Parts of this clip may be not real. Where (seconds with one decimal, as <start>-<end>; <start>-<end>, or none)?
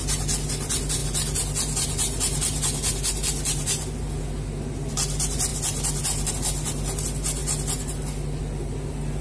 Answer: none